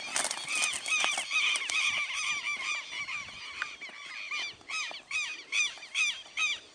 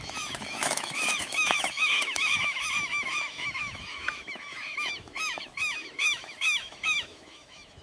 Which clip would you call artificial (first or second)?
second